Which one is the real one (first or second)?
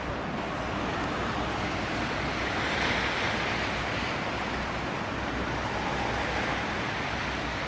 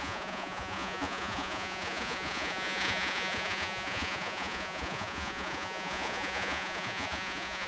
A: first